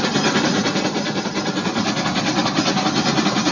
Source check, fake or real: real